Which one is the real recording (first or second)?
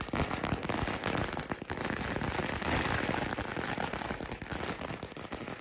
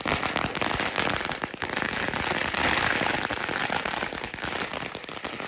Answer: first